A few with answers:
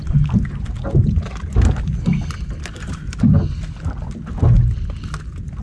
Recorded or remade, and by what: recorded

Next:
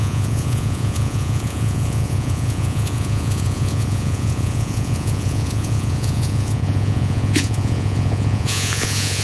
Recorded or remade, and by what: remade, vocoder, Vocos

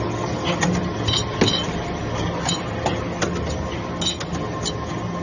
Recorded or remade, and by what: recorded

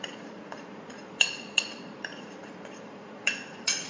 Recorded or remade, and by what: remade, vocoder, Vocos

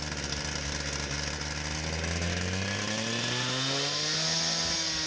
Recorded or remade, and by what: recorded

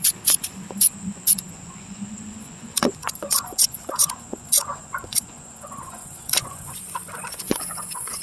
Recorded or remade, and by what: remade, vocoder, Vocos